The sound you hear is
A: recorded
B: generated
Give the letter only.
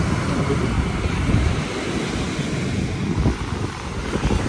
A